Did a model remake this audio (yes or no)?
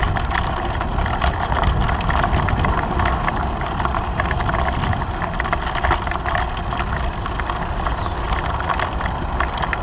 no